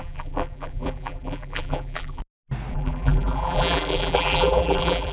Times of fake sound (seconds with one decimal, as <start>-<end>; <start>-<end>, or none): 0.0-2.2; 2.7-5.1